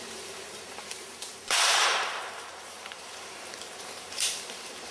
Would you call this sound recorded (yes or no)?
no